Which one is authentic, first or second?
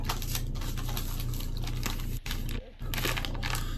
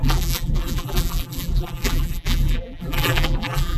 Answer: first